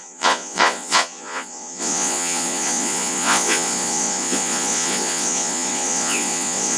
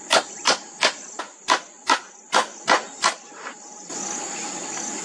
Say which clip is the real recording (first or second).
second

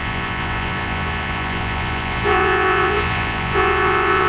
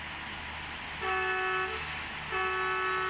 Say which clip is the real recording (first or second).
second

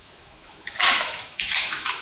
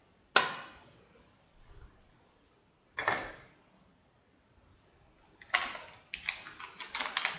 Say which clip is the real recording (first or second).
second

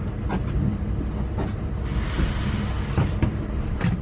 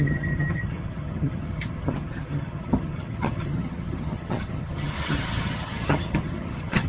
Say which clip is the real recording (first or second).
first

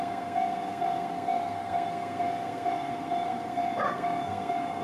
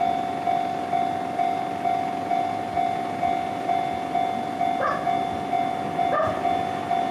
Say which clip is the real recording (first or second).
second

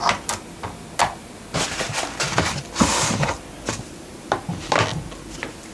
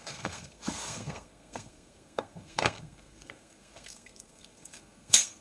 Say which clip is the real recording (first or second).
first